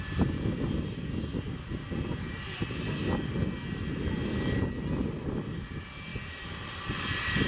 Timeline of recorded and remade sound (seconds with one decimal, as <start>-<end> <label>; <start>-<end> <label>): 0.0-7.5 recorded